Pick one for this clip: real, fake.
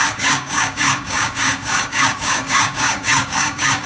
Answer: fake